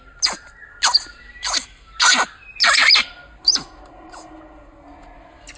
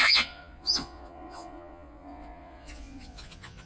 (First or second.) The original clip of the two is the first